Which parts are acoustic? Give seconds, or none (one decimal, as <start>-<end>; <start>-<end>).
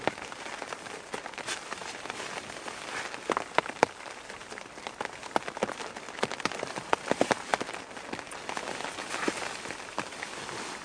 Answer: 0.0-10.8